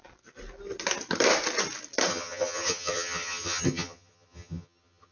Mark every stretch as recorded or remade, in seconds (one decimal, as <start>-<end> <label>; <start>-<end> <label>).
0.0-2.1 recorded; 2.1-5.1 remade